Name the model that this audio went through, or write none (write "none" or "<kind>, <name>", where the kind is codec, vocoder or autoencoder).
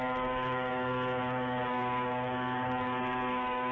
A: codec, DAC